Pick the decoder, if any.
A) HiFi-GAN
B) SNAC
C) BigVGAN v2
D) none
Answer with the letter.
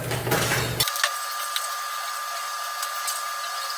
D